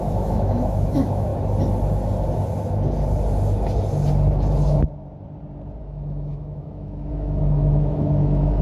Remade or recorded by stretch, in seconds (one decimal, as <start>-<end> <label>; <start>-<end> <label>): 0.0-1.3 remade; 1.3-5.8 recorded; 5.8-8.6 remade